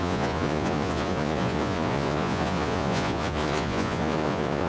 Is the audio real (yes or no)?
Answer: no